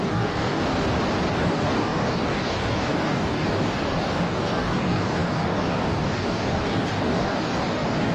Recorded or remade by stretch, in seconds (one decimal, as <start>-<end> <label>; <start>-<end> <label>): 0.0-0.6 remade; 0.6-1.3 recorded; 1.3-8.1 remade